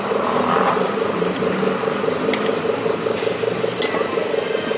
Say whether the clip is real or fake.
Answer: real